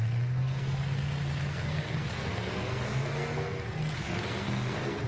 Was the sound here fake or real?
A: fake